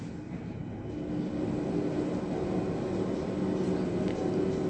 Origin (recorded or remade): recorded